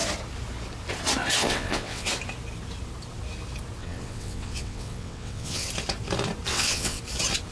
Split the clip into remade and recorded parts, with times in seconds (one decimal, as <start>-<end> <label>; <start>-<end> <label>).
0.0-1.4 recorded; 1.4-2.1 remade; 2.1-3.8 recorded; 3.8-5.7 remade; 5.7-6.5 recorded; 6.5-7.0 remade; 7.0-7.5 recorded